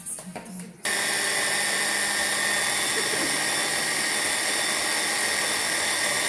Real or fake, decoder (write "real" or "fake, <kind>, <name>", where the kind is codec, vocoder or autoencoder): real